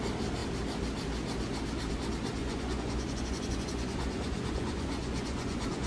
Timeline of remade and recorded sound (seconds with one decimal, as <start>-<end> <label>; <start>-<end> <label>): 0.0-2.4 recorded; 2.4-5.9 remade